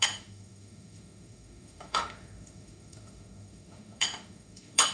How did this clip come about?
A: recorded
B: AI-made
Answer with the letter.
B